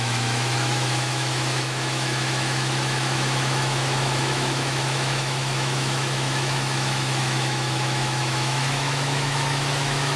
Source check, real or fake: fake